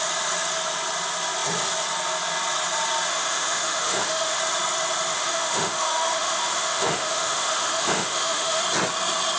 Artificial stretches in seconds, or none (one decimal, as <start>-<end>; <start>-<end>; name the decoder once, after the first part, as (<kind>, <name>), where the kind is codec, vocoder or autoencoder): 3.1-4.4 (autoencoder, DAC-VAE); 5.1-8.6

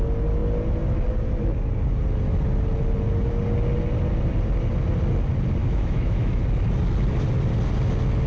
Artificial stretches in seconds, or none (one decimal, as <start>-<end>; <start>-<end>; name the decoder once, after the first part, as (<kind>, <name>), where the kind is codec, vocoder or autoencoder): 5.6-6.4 (autoencoder, DAC-VAE)